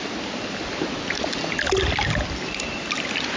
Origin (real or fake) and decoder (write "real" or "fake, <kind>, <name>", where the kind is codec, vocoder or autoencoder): real